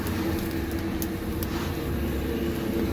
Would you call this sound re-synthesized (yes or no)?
no